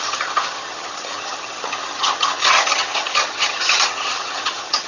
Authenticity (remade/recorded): remade